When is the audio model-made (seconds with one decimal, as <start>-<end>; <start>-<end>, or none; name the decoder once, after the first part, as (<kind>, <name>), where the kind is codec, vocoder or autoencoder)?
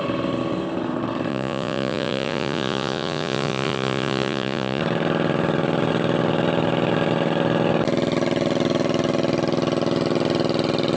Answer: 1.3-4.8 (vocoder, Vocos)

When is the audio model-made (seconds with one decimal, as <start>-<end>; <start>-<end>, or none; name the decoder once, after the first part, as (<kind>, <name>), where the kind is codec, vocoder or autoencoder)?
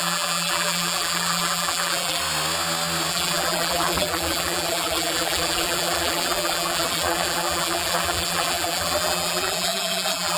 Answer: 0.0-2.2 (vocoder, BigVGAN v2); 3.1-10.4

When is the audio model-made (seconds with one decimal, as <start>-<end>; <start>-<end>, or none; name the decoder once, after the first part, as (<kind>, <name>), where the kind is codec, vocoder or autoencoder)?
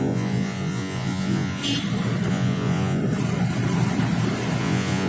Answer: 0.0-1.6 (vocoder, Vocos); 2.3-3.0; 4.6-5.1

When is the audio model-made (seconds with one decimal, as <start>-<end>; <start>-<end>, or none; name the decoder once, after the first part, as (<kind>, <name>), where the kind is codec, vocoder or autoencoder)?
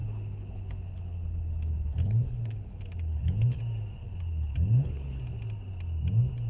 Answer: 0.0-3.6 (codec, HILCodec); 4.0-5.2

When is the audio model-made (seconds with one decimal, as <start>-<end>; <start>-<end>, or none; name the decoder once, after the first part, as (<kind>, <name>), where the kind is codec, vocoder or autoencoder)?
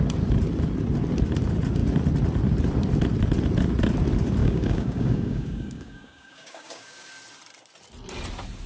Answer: 4.4-7.1 (codec, DAC)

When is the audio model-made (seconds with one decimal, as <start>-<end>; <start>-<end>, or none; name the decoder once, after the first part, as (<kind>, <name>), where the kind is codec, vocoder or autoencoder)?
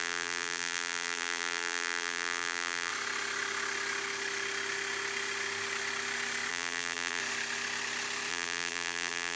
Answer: 0.0-2.9 (vocoder, BigVGAN v2); 6.5-7.2; 8.3-9.4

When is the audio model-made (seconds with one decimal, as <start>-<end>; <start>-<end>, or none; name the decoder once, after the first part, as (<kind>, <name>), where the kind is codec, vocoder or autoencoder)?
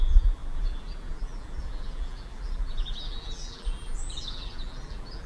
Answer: 0.0-5.3 (vocoder, BigVGAN v2)